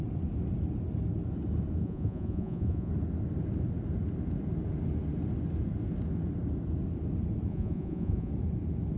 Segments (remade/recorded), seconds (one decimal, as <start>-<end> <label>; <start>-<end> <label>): 0.0-1.8 recorded; 1.8-2.9 remade; 2.9-7.5 recorded; 7.5-8.3 remade; 8.3-9.0 recorded